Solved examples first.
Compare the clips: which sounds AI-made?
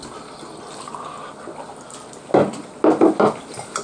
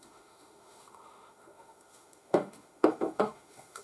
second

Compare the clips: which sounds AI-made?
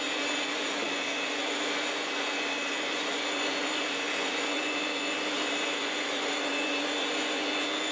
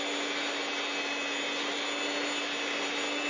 first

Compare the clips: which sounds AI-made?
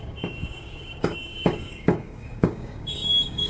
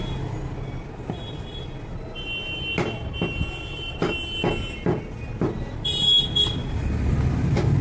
first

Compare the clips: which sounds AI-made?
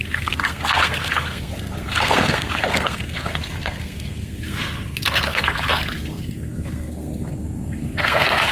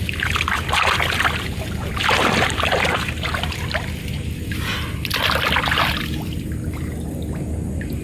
first